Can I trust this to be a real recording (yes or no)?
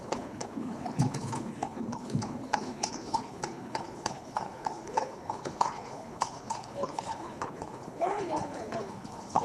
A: no